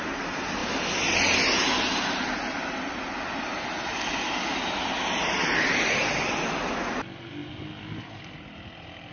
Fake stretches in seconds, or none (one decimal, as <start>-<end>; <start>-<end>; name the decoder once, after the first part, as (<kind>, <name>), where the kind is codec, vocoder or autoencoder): none